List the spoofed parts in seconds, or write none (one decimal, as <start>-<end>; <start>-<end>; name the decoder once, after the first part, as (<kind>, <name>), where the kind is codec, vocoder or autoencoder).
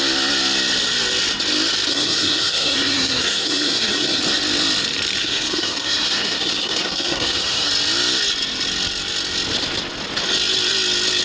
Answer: 1.9-4.2 (codec, SNAC); 5.2-7.7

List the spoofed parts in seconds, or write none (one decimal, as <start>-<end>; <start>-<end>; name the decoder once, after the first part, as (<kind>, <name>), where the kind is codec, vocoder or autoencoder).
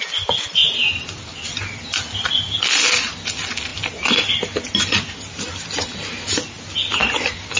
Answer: none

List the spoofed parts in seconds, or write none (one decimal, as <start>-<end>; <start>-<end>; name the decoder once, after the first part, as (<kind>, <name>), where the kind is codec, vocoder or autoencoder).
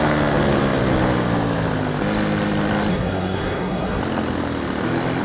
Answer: 2.9-4.0 (codec, SNAC)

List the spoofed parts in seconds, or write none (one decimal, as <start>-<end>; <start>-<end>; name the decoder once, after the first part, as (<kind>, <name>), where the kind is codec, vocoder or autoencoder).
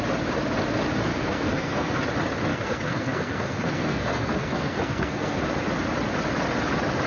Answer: 1.1-2.0 (codec, SNAC); 2.5-5.4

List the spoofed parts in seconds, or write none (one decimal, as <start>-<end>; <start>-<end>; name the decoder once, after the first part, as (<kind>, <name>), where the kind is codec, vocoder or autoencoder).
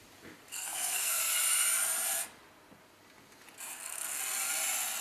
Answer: 0.5-1.2 (codec, SNAC); 3.7-4.2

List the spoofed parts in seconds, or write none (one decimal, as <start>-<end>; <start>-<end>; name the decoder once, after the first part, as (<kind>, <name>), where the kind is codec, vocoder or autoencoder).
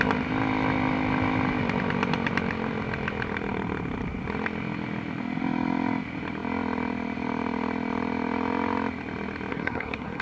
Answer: 9.5-10.2 (codec, SNAC)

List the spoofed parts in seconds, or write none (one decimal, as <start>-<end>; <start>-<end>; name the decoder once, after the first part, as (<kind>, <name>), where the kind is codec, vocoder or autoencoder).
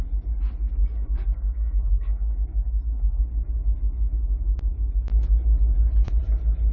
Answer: 0.8-3.2 (codec, SNAC)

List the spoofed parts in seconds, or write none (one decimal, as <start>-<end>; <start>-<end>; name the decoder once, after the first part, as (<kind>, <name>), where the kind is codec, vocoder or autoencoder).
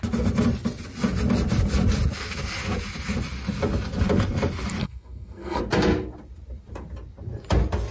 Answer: 4.8-5.6 (codec, SNAC)